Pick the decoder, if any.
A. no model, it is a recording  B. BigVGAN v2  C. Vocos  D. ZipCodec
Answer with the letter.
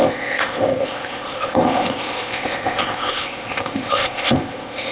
D